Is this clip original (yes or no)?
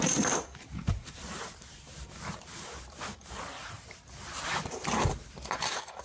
no